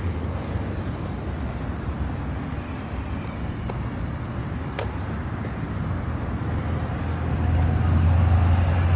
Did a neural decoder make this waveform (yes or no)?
no